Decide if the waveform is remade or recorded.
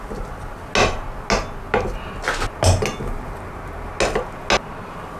recorded